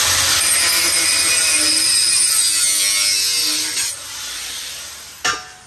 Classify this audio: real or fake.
real